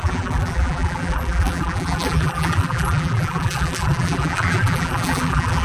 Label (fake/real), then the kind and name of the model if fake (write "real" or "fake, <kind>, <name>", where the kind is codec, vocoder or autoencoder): fake, vocoder, BigVGAN v2